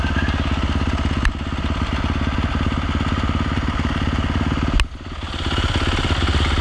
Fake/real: real